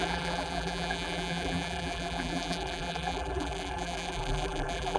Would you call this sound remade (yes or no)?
yes